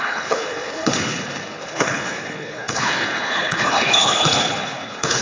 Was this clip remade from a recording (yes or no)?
yes